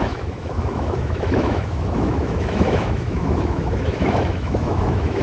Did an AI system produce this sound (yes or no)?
yes